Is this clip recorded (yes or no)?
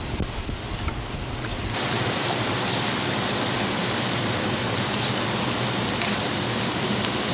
no